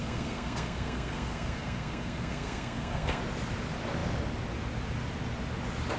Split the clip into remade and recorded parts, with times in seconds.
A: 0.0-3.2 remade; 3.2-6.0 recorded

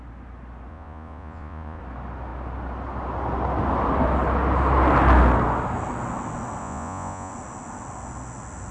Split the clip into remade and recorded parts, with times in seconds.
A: 0.0-0.7 recorded; 0.7-1.8 remade; 1.8-6.6 recorded; 6.6-7.3 remade; 7.3-8.7 recorded

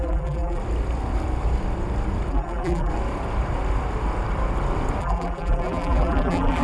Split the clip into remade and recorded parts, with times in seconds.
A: 0.0-0.6 remade; 0.6-2.3 recorded; 2.3-2.9 remade; 2.9-5.0 recorded; 5.0-6.6 remade

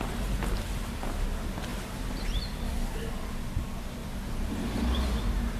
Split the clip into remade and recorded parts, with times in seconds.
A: 0.0-5.6 recorded

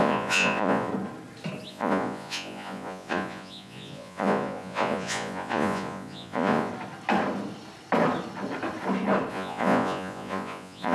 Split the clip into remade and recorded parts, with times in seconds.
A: 0.0-0.9 remade; 0.9-1.7 recorded; 1.7-6.7 remade; 6.7-9.3 recorded; 9.3-10.9 remade

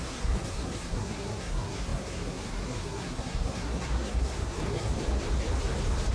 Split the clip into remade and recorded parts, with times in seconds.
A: 0.0-4.9 remade; 4.9-6.1 recorded

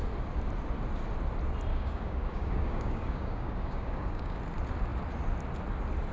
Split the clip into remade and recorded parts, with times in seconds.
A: 0.0-1.7 recorded; 1.7-4.4 remade; 4.4-6.1 recorded